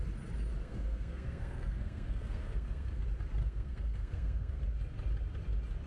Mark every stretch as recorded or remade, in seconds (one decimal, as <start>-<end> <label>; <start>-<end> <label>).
0.0-0.6 recorded; 0.6-3.0 remade; 3.0-3.4 recorded; 3.4-4.6 remade; 4.6-5.9 recorded